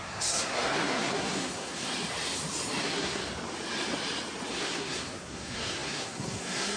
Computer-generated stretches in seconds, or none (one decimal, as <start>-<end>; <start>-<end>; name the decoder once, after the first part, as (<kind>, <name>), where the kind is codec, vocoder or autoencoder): 0.0-1.9 (codec, SNAC); 2.8-3.2; 4.5-6.8